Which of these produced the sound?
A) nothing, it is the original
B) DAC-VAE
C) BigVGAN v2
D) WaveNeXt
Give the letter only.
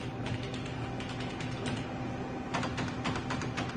A